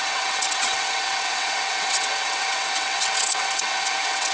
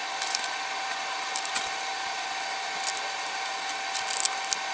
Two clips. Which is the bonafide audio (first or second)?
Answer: second